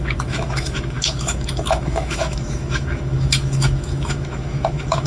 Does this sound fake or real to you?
fake